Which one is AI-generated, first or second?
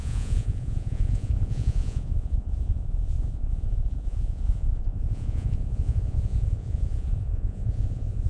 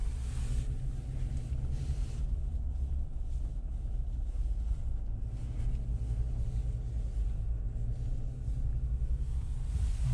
first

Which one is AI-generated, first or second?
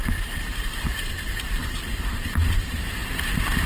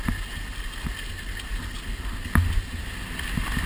first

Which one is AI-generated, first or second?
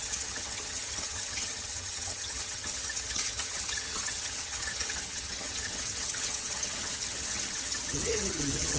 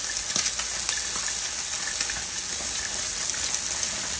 first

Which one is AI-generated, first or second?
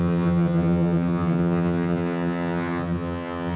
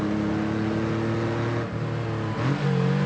first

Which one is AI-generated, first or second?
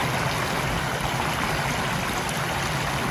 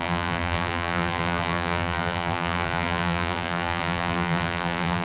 second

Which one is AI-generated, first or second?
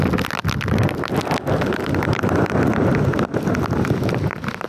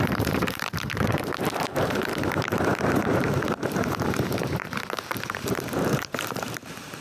second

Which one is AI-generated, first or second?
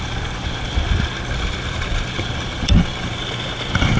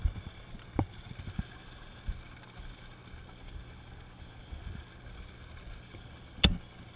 first